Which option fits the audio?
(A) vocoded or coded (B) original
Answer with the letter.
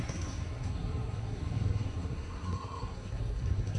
A